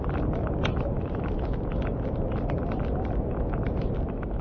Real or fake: real